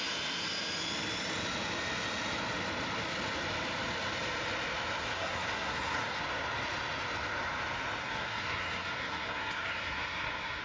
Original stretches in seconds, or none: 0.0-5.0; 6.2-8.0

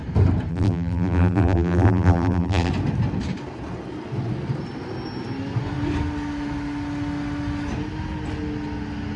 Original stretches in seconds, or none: 0.0-0.5; 2.7-9.2

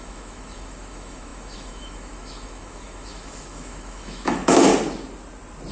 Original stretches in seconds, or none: 4.7-5.7

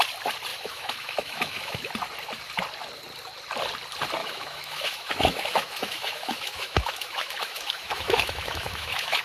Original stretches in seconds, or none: 0.0-0.5; 1.9-4.2

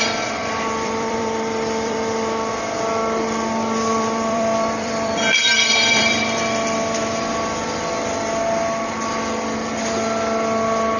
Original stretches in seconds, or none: 0.0-0.4; 2.5-3.9; 6.0-11.0

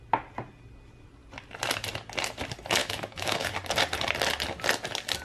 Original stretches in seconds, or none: 0.0-2.8; 3.5-5.2

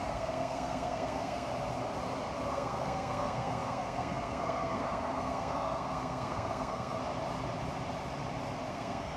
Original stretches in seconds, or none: 1.5-2.5; 7.0-8.7